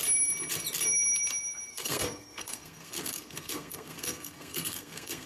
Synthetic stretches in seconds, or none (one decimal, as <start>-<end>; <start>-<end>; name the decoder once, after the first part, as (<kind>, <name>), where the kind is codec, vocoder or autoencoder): 1.7-5.3 (codec, SNAC)